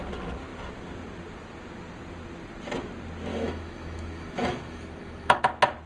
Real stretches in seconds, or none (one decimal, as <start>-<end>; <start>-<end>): 0.0-3.3; 5.4-5.9